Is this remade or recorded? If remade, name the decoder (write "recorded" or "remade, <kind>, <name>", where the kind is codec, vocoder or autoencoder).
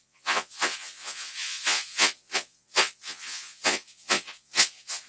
remade, vocoder, Vocos